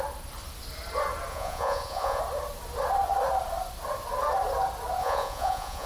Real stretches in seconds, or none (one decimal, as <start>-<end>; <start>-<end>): 0.0-1.3; 2.2-5.0